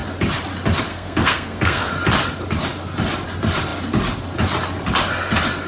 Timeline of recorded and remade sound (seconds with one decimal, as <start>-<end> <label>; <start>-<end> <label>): 0.0-0.9 recorded; 0.9-1.9 remade; 1.9-5.7 recorded